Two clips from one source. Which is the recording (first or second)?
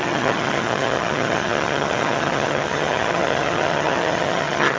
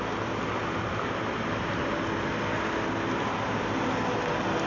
second